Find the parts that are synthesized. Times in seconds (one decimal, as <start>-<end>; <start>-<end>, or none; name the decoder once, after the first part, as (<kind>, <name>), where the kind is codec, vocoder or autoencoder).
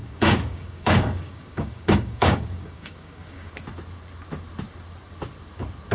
0.0-3.5 (codec, DAC)